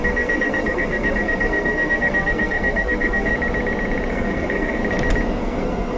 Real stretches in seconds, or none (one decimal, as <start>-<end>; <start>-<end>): 3.3-4.1; 4.8-5.4